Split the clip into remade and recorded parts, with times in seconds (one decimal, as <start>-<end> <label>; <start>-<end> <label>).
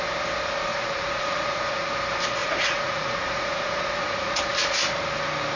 0.0-0.7 recorded; 0.7-1.8 remade; 1.8-2.4 recorded; 2.4-4.4 remade; 4.4-5.6 recorded